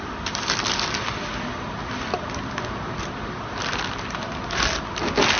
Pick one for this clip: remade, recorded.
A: recorded